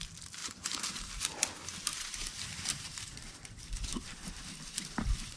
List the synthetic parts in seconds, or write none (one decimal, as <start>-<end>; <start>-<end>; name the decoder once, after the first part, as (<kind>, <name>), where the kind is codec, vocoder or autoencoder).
0.4-1.1 (vocoder, BigVGAN v2); 1.9-3.1; 3.9-4.5